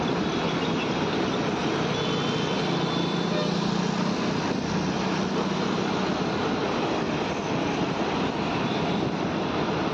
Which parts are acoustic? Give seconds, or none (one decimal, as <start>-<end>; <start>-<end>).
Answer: 0.0-9.9